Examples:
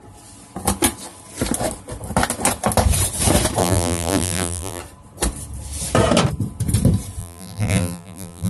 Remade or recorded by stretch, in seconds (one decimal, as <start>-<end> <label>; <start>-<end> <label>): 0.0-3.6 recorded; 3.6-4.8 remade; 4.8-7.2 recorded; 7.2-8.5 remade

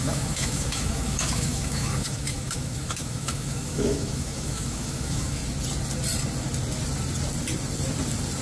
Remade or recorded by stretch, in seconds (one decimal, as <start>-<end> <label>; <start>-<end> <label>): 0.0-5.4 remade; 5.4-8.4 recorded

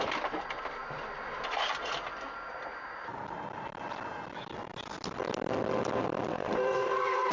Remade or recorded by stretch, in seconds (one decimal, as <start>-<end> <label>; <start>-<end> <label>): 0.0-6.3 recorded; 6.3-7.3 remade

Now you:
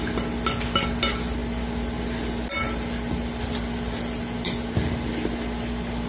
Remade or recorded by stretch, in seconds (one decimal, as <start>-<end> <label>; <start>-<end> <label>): 0.0-6.1 recorded

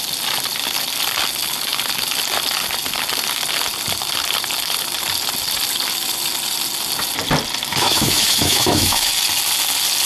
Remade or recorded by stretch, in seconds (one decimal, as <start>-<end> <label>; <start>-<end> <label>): 0.0-7.7 recorded; 7.7-9.1 remade; 9.1-10.1 recorded

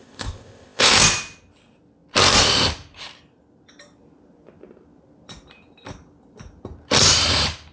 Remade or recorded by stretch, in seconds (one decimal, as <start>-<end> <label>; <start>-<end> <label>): 0.0-0.9 remade; 0.9-7.7 recorded